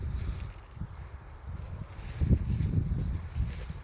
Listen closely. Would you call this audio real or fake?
real